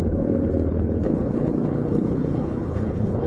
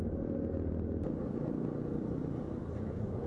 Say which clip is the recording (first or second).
second